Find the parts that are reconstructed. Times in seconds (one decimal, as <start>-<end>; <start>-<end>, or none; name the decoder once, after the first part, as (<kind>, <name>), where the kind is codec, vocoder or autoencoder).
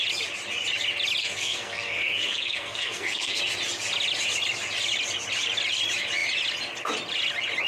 1.2-3.4 (codec, SNAC)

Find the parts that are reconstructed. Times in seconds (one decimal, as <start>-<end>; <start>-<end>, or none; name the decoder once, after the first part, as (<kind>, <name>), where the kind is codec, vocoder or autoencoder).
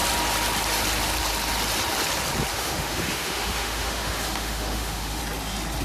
2.5-5.2 (autoencoder, DAC-VAE)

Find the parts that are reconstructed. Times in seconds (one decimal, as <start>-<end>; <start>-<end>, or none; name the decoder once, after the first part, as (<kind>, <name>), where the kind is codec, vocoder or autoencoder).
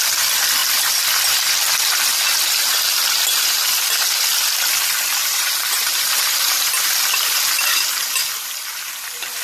5.2-6.0 (vocoder, BigVGAN v2)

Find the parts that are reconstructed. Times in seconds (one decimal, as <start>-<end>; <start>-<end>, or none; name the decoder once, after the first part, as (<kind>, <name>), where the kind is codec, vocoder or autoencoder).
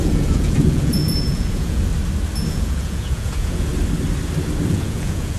0.0-1.9 (vocoder, Vocos); 2.5-3.7; 4.7-5.4